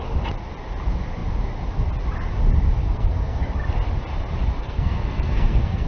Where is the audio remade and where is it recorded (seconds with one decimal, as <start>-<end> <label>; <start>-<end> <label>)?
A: 0.0-2.8 recorded; 2.8-3.4 remade; 3.4-4.6 recorded; 4.6-5.9 remade